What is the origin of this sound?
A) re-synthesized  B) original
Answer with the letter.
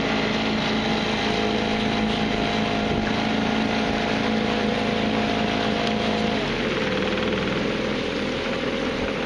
B